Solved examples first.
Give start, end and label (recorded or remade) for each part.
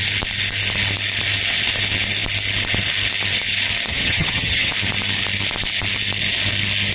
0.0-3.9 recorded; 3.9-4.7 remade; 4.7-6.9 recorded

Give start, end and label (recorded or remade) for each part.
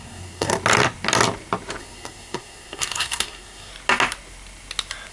0.0-0.5 remade; 0.5-1.8 recorded; 1.8-3.7 remade; 3.7-5.1 recorded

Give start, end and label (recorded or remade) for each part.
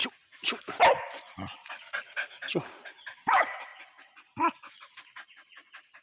0.0-1.0 recorded; 1.0-6.0 remade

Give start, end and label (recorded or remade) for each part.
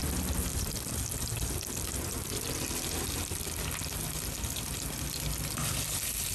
0.0-6.3 recorded